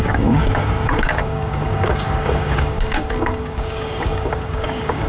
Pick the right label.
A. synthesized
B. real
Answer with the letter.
A